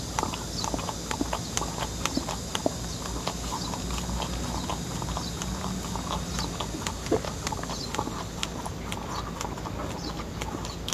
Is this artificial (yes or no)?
no